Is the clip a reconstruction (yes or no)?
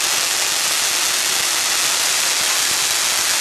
no